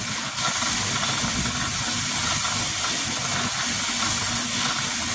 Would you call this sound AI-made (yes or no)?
no